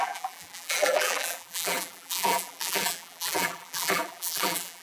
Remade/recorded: remade